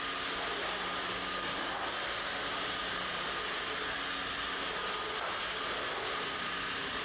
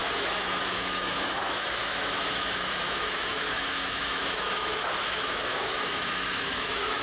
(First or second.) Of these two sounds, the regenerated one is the second